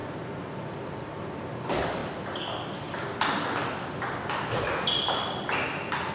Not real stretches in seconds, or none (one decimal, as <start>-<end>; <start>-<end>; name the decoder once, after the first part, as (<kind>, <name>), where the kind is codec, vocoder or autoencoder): none